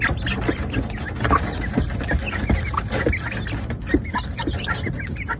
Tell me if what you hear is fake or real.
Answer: real